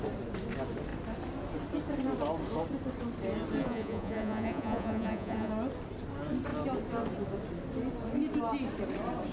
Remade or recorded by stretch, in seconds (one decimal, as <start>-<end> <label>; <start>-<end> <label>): 0.0-3.6 recorded; 3.6-5.5 remade; 5.5-9.3 recorded